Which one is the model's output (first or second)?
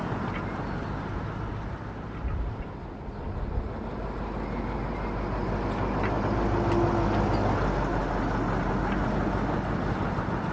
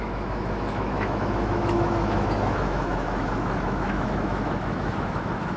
second